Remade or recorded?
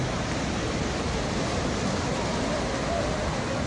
recorded